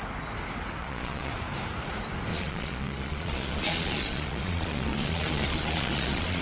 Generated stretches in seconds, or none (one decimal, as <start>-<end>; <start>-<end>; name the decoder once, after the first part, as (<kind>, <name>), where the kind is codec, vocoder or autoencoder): 0.8-1.3 (vocoder, Vocos); 2.3-6.4